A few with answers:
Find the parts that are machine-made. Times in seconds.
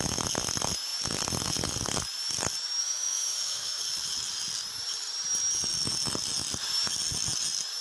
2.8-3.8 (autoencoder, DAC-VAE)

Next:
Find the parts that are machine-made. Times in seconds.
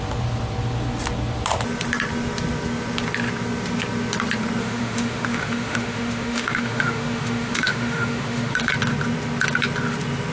4.6-8.7 (autoencoder, DAC-VAE)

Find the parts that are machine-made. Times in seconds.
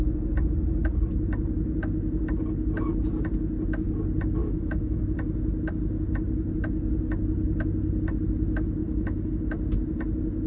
4.4-5.0 (autoencoder, DAC-VAE); 8.8-9.3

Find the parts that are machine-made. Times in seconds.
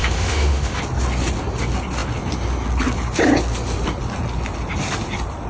0.0-0.8 (autoencoder, DAC-VAE)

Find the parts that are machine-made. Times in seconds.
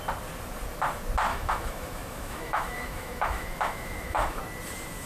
1.3-4.4 (autoencoder, DAC-VAE)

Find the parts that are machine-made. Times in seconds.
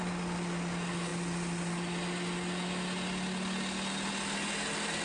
none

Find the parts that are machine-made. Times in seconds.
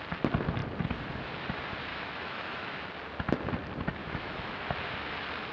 1.9-2.9 (autoencoder, DAC-VAE); 4.0-4.6